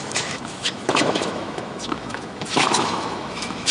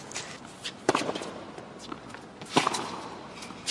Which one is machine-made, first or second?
first